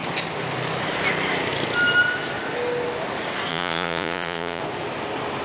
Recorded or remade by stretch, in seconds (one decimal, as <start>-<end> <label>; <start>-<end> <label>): 0.0-3.5 recorded; 3.5-4.6 remade; 4.6-5.4 recorded